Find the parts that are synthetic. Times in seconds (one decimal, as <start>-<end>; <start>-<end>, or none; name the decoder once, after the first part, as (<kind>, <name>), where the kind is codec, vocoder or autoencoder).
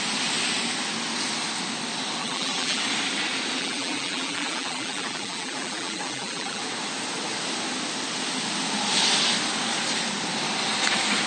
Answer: 2.2-2.8 (vocoder, BigVGAN v2); 3.6-6.6